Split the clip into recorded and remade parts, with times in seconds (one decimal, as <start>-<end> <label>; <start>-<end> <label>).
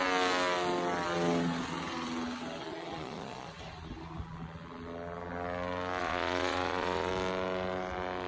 0.0-2.6 recorded; 2.6-3.5 remade; 3.5-6.0 recorded; 6.0-7.1 remade; 7.1-8.3 recorded